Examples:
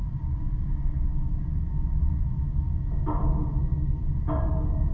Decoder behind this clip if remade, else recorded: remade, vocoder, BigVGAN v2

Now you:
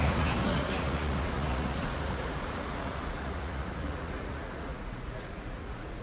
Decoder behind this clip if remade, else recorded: remade, vocoder, Vocos